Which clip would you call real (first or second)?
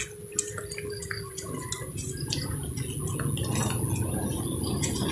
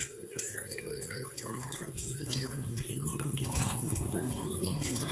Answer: first